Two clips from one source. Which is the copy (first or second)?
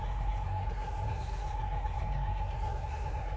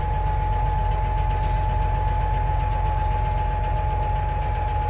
first